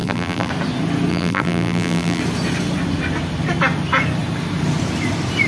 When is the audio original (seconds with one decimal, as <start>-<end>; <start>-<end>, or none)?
0.5-1.1; 2.2-5.5